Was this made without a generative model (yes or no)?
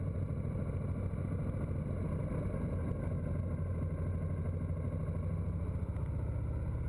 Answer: yes